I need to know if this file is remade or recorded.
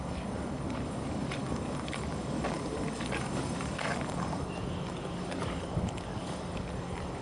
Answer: remade